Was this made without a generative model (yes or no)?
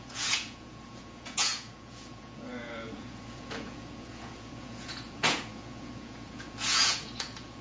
no